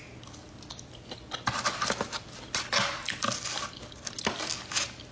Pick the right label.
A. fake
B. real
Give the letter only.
B